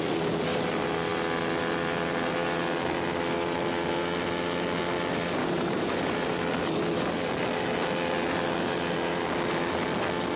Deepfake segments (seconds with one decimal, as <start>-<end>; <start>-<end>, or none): 5.4-6.4